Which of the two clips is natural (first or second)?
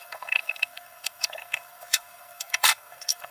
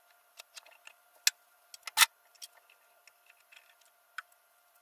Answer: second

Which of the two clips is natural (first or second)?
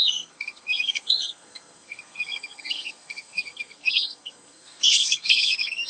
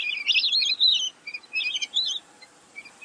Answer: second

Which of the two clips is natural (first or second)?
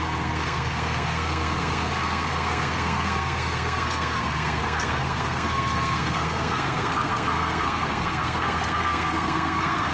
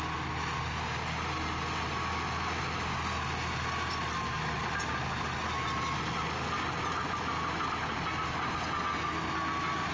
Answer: second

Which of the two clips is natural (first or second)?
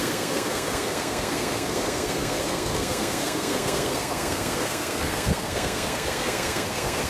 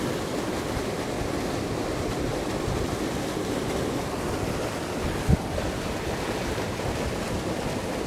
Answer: second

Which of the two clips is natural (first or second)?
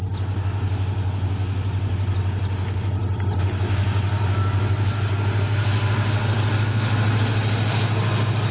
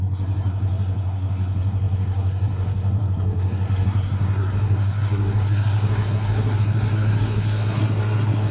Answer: first